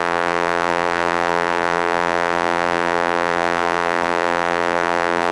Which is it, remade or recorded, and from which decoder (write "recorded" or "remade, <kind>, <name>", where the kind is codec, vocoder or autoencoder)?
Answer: remade, vocoder, BigVGAN v2